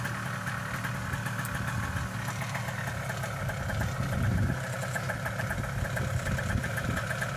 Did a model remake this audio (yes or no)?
no